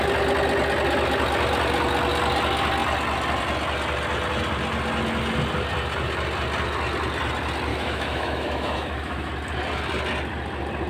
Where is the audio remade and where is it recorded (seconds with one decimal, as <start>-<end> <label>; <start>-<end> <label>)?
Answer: 0.0-7.7 recorded; 7.7-9.3 remade; 9.3-10.9 recorded